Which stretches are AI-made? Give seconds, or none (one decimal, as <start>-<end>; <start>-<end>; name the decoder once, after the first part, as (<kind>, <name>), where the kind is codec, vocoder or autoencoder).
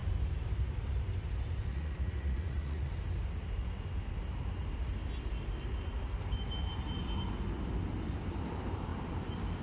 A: 1.7-2.9 (vocoder, Vocos)